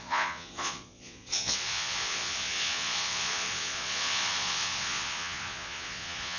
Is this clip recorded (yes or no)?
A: no